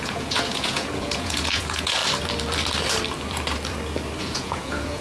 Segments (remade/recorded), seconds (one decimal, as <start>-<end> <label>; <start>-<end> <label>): 0.0-2.0 remade; 2.0-4.2 recorded; 4.2-5.0 remade